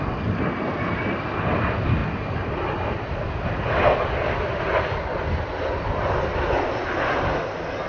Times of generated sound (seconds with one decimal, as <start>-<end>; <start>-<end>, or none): none